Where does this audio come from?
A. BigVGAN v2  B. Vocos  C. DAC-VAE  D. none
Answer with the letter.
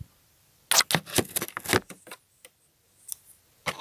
D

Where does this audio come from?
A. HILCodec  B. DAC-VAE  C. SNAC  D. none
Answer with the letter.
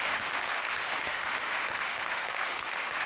B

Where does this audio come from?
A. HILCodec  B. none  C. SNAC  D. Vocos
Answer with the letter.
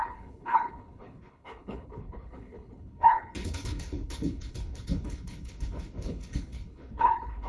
A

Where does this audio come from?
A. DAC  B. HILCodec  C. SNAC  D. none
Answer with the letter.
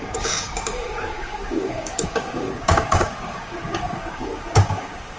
A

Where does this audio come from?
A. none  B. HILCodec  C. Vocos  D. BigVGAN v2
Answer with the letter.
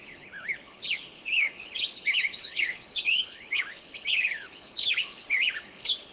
B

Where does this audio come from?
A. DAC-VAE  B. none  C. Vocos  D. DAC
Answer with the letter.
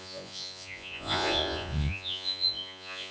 C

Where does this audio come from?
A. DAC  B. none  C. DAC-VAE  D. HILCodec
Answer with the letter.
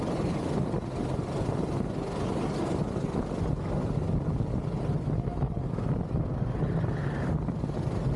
B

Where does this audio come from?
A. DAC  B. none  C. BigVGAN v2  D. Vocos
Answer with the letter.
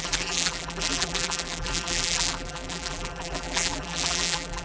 C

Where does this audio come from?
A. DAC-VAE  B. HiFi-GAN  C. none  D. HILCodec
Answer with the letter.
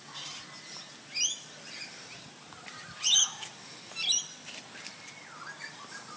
C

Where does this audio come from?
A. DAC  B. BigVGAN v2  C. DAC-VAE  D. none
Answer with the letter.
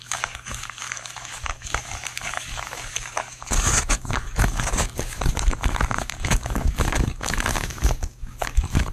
A